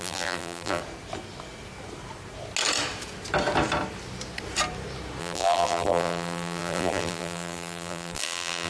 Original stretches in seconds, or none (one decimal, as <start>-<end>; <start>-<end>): 0.8-5.2

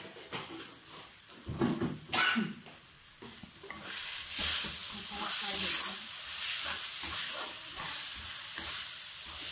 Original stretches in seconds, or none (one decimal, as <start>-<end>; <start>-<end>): 0.0-9.5

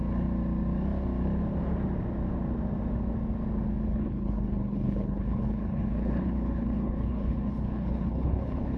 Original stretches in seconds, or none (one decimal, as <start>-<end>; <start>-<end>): 0.0-3.9

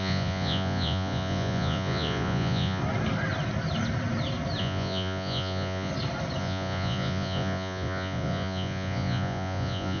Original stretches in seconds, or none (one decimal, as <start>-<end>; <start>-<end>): 2.8-4.6; 5.9-6.4

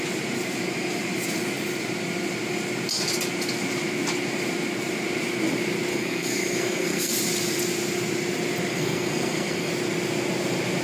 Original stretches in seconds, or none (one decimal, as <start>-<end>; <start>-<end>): 0.0-5.9; 7.1-8.7; 9.7-10.8

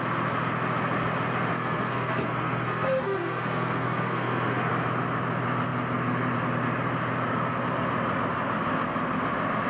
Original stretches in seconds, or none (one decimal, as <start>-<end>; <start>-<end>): 0.0-1.5; 4.7-9.7